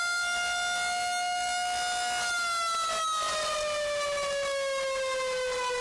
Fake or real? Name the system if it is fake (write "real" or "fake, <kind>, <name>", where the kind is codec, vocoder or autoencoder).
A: real